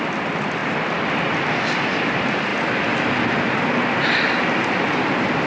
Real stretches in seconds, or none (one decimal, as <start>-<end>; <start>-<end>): none